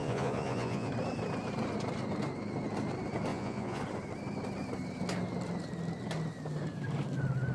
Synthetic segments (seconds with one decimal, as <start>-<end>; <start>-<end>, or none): 0.0-0.9; 3.3-3.8